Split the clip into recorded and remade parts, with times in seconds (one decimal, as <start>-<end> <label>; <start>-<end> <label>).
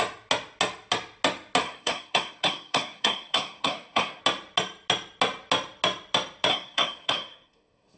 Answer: 0.0-1.6 recorded; 1.6-4.2 remade; 4.2-6.5 recorded; 6.5-8.0 remade